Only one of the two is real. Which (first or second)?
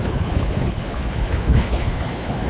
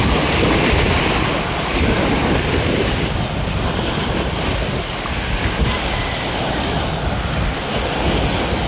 second